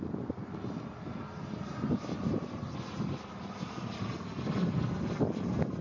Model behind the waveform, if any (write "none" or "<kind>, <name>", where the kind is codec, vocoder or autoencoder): none